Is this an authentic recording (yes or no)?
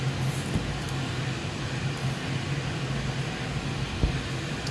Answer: yes